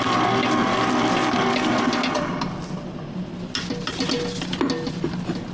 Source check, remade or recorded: recorded